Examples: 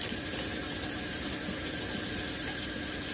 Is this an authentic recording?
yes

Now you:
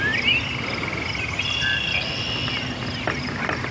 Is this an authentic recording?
yes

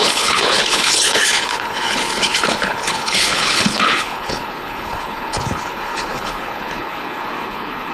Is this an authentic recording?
no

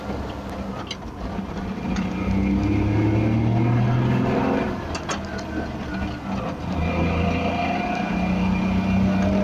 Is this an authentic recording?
yes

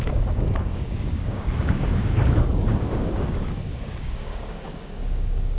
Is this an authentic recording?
no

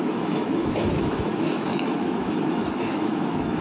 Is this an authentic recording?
no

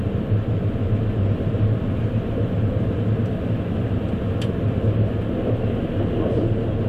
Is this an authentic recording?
yes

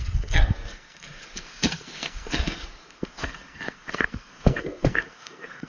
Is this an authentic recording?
no